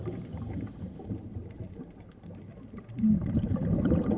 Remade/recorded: recorded